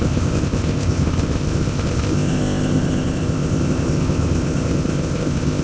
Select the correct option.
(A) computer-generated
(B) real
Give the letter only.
A